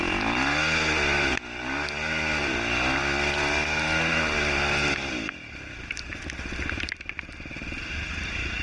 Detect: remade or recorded recorded